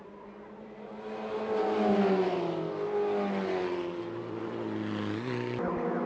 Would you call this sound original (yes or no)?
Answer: yes